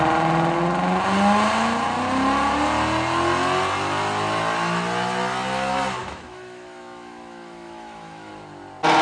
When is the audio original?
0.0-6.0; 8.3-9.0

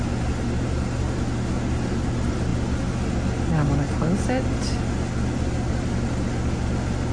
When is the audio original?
0.0-7.1

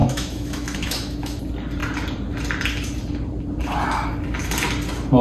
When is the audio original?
1.4-5.2

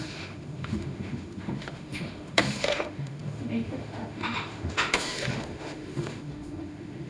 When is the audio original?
none

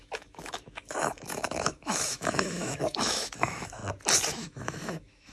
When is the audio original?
3.8-4.3

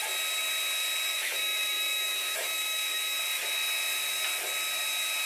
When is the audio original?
0.0-1.1; 3.2-5.3